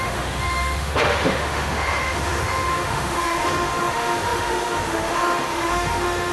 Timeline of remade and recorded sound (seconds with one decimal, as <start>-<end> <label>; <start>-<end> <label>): 0.0-6.3 remade